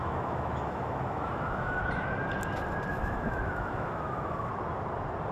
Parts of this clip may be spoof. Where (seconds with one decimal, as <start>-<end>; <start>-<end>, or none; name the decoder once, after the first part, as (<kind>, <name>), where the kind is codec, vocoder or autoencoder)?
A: 0.0-1.8 (autoencoder, DAC-VAE); 2.9-4.5

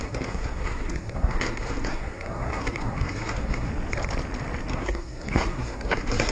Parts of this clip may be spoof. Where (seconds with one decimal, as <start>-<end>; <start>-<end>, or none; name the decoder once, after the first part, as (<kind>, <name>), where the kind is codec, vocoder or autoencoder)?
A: 0.0-3.7 (codec, SNAC); 4.7-6.3

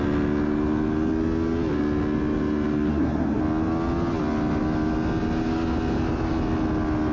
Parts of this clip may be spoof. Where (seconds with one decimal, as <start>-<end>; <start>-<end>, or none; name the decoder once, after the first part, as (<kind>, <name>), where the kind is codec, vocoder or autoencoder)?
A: 2.9-3.4 (codec, SNAC)

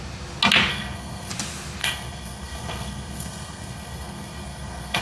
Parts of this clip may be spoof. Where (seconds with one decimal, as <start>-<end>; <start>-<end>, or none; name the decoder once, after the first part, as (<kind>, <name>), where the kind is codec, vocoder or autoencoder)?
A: 0.7-1.3 (codec, SNAC); 1.8-5.0

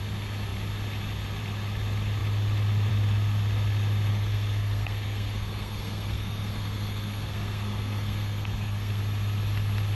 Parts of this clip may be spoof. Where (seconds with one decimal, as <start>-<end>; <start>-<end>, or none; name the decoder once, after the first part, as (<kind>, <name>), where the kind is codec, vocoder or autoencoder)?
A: 4.1-9.0 (codec, SNAC)

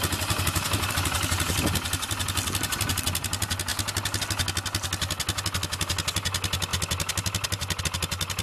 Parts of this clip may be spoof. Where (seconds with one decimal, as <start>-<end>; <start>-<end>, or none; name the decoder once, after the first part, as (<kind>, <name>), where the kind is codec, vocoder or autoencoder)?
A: none

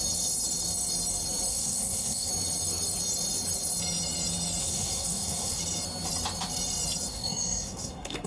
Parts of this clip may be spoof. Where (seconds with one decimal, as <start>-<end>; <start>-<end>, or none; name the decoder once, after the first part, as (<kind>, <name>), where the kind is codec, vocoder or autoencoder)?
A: 1.5-2.3 (codec, SNAC); 4.6-5.6; 7.1-8.3